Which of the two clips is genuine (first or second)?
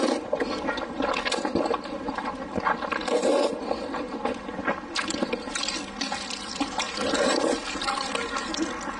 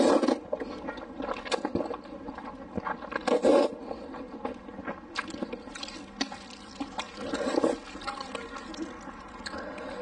second